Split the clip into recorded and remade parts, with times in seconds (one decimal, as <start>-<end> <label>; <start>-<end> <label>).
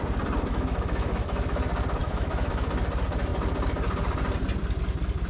0.0-0.5 recorded; 0.5-1.6 remade; 1.6-2.0 recorded; 2.0-2.6 remade; 2.6-5.3 recorded